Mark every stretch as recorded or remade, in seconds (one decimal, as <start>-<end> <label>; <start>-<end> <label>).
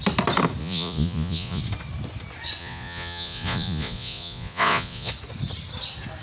0.0-0.6 recorded; 0.6-1.6 remade; 1.6-2.6 recorded; 2.6-5.1 remade; 5.1-6.2 recorded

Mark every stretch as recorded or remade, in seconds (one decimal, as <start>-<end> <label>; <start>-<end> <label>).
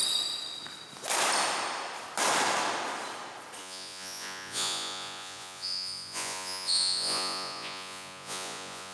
0.0-3.6 recorded; 3.6-8.9 remade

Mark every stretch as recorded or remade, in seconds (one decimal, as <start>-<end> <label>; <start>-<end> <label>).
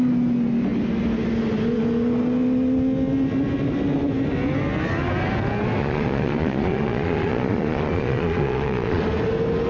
0.0-5.8 recorded; 5.8-9.0 remade; 9.0-9.7 recorded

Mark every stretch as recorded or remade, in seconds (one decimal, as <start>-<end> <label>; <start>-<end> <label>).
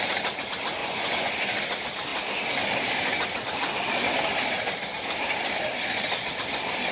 0.0-0.8 recorded; 0.8-1.3 remade; 1.3-6.9 recorded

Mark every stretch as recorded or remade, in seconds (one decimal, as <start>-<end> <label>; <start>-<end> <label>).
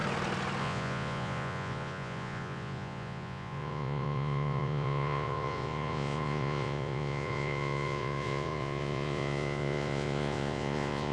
0.0-0.6 recorded; 0.6-11.1 remade